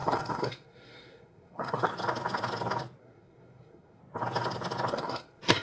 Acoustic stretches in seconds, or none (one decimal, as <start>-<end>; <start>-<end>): 1.9-3.0; 4.0-4.9